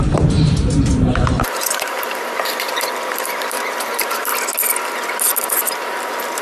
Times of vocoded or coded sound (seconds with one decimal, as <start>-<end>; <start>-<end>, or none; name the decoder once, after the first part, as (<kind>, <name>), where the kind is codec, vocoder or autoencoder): 0.0-4.3 (vocoder, BigVGAN v2); 5.4-6.4